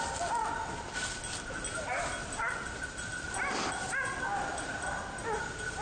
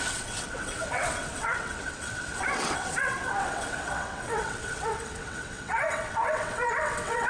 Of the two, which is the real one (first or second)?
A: first